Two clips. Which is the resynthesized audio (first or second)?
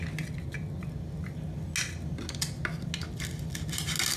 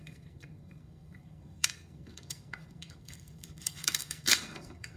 second